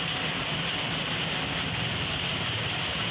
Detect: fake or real real